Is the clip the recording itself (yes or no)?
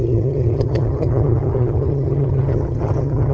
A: no